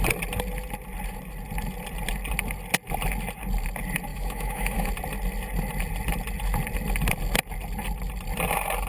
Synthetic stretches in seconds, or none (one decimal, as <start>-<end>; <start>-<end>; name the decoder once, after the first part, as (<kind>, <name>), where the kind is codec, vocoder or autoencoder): 4.1-4.9 (autoencoder, DAC-VAE)